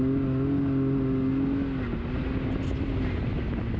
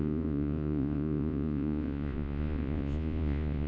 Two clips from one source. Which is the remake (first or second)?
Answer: second